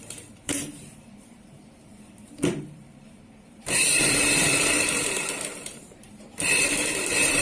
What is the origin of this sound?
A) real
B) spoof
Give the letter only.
B